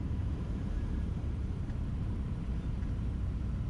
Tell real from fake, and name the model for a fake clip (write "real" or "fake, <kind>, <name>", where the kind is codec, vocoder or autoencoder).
fake, vocoder, BigVGAN v2